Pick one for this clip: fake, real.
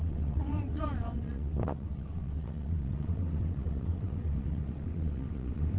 fake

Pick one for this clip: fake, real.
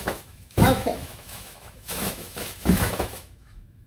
fake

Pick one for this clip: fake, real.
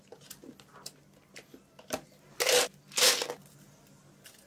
real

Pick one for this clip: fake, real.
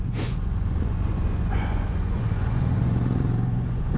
fake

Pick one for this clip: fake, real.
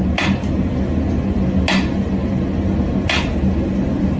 real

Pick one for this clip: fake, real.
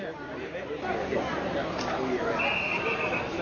real